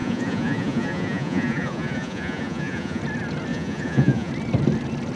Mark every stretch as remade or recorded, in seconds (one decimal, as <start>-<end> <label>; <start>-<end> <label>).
0.0-3.0 remade; 3.0-3.5 recorded; 3.5-4.3 remade; 4.3-5.2 recorded